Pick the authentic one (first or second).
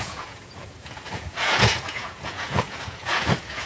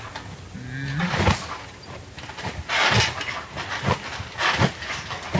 second